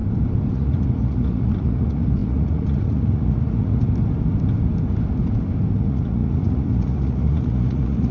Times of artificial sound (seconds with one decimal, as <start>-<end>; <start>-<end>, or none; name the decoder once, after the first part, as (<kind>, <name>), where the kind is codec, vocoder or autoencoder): 0.5-3.8 (vocoder, Vocos); 5.7-8.1